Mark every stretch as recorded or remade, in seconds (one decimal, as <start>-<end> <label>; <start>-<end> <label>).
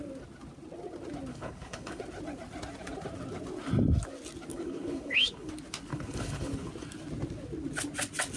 0.0-1.3 recorded; 1.3-2.0 remade; 2.0-4.5 recorded; 4.5-5.5 remade; 5.5-5.9 recorded; 5.9-6.7 remade; 6.7-8.4 recorded